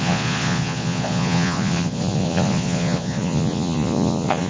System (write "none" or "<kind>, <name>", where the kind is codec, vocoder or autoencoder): vocoder, Vocos